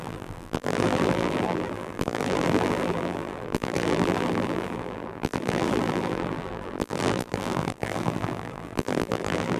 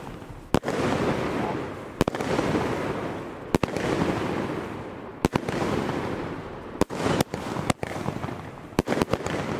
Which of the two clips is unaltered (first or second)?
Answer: second